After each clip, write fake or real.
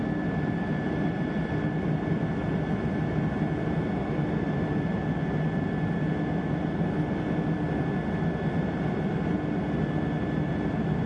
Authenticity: real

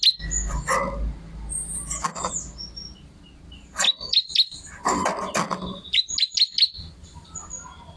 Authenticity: real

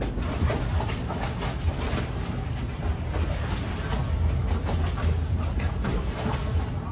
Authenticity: real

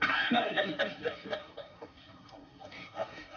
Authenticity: fake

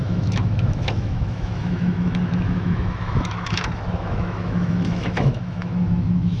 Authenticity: fake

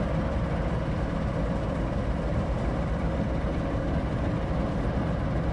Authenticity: real